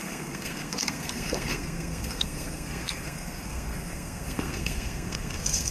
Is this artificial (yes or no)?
yes